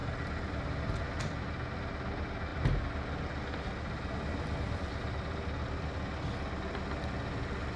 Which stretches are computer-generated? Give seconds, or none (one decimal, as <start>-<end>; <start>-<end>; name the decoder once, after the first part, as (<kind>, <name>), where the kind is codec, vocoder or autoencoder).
none

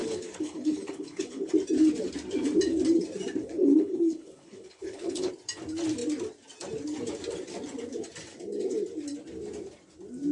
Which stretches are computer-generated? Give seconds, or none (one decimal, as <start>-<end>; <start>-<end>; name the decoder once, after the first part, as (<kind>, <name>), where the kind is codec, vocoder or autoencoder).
0.0-1.5 (codec, HILCodec); 3.4-5.3

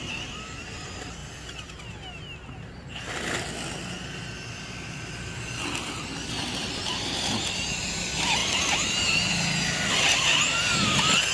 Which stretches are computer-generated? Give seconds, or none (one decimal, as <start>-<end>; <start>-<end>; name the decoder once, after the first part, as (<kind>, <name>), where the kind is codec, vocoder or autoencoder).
none

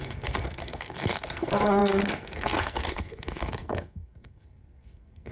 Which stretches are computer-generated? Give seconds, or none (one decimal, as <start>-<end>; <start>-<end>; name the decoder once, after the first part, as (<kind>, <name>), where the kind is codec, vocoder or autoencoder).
0.0-5.3 (codec, SNAC)